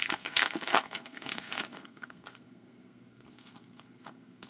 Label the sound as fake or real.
fake